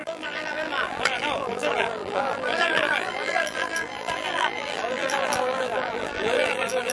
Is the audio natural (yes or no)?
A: no